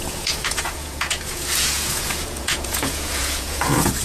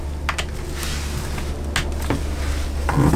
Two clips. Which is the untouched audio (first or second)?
second